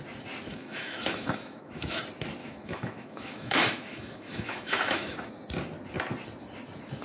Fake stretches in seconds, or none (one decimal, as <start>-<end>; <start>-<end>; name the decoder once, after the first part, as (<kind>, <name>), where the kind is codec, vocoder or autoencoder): 0.5-2.0 (autoencoder, DAC-VAE); 2.4-5.3